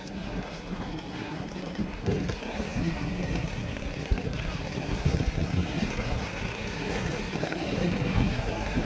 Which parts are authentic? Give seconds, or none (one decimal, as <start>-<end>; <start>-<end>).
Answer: none

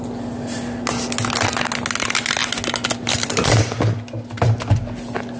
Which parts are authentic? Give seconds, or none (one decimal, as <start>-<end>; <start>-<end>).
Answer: 0.0-5.4